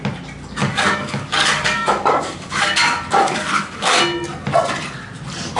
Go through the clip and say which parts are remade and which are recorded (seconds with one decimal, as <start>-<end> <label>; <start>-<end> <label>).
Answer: 0.0-0.6 recorded; 0.6-4.0 remade; 4.0-5.6 recorded